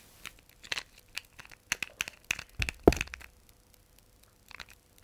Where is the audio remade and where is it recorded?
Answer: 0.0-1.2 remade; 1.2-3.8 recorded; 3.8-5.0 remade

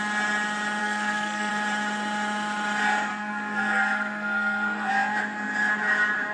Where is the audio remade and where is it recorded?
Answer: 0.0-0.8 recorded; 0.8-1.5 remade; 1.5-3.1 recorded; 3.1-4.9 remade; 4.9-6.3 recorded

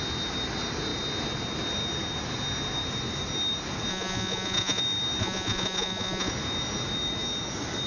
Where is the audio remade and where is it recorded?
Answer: 0.0-3.9 recorded; 3.9-4.8 remade; 4.8-5.2 recorded; 5.2-6.3 remade; 6.3-7.9 recorded

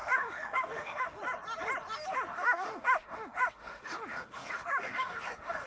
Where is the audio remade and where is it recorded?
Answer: 0.0-1.2 remade; 1.2-2.1 recorded; 2.1-5.7 remade